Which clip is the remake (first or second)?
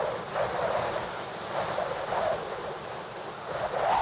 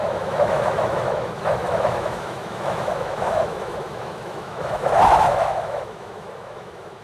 second